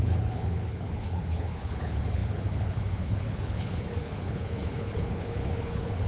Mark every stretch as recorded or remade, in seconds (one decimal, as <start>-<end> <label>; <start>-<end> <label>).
0.0-6.1 remade